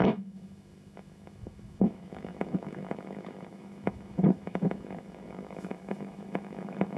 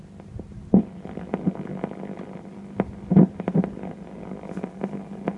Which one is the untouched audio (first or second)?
second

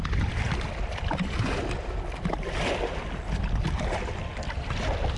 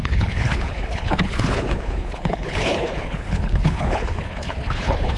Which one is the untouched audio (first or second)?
first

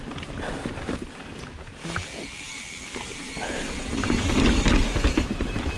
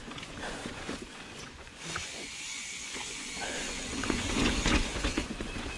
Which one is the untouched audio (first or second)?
first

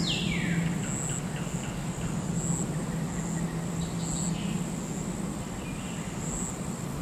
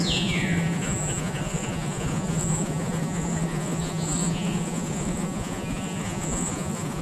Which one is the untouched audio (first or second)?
first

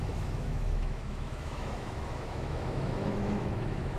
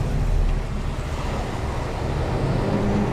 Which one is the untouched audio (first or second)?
second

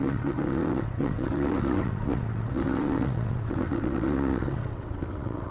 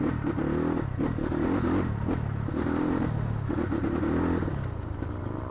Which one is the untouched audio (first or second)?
second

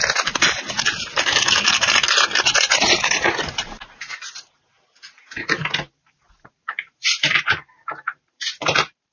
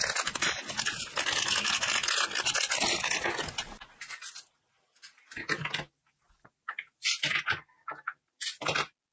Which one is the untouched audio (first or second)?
second